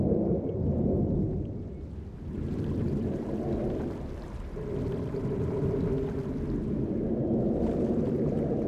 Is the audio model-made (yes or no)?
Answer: no